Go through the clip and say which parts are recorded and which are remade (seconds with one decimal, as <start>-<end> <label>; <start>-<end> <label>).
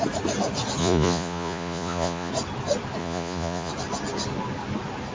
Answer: 0.0-0.8 recorded; 0.8-2.3 remade; 2.3-3.0 recorded; 3.0-3.7 remade; 3.7-5.1 recorded